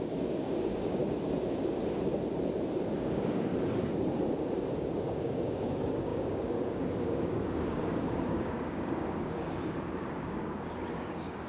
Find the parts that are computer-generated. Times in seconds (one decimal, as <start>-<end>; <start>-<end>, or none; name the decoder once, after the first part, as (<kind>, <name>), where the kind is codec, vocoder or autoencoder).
0.0-1.0 (codec, DAC); 2.7-3.5; 4.8-11.5